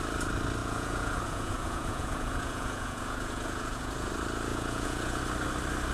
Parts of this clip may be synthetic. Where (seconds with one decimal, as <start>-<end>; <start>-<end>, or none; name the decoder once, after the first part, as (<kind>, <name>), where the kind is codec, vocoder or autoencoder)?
0.6-4.1 (vocoder, Vocos); 4.5-5.2